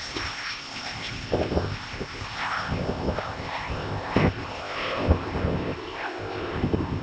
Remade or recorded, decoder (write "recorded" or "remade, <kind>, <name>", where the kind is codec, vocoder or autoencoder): remade, codec, ZipCodec